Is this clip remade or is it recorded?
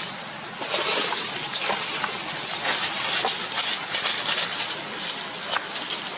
recorded